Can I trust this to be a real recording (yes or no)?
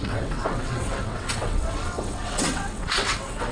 no